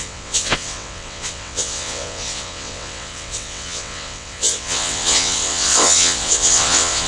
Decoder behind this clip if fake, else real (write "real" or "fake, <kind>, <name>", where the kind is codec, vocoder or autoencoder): fake, vocoder, WaveNeXt